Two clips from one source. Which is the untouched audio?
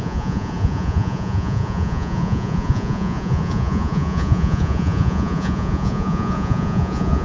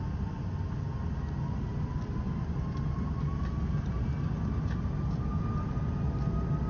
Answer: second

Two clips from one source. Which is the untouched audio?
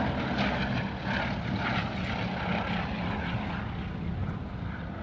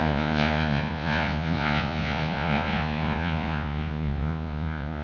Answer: first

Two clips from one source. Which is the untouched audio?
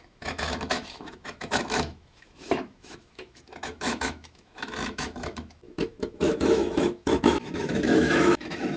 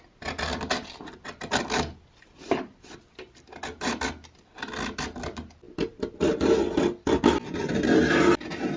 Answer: second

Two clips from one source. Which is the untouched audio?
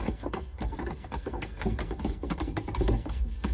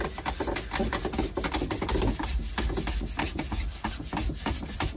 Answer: second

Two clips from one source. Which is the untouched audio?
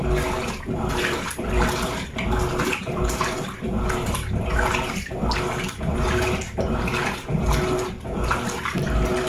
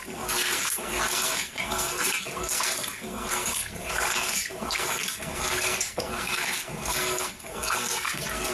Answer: first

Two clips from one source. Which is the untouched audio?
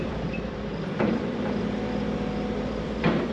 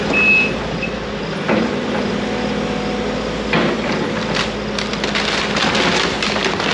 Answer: second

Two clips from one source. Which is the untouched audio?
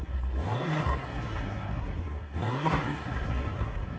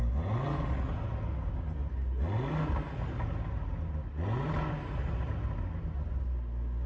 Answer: second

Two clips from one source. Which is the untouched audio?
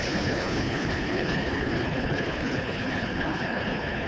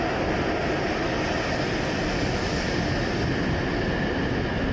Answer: second